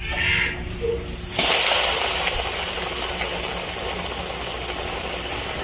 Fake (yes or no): no